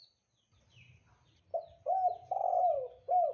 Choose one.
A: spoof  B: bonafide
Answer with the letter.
B